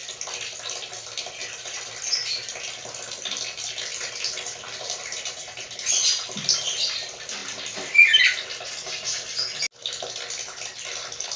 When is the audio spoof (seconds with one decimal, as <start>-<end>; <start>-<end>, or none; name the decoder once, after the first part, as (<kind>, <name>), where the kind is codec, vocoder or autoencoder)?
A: 1.4-1.9 (vocoder, BigVGAN v2); 3.9-5.9